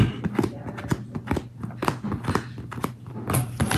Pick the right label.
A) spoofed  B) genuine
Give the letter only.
B